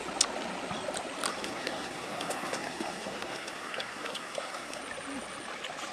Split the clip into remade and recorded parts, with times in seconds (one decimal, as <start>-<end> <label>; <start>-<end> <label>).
0.0-1.3 recorded; 1.3-4.8 remade; 4.8-5.9 recorded